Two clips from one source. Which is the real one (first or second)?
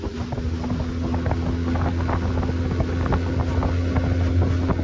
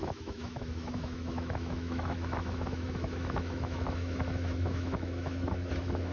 first